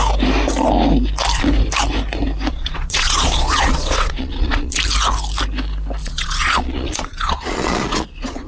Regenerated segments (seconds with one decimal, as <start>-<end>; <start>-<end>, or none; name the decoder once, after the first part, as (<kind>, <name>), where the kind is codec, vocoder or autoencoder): 2.5-4.8 (vocoder, Vocos); 6.0-8.5